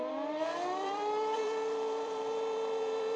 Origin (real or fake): fake